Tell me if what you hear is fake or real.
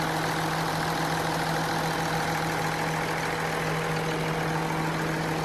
real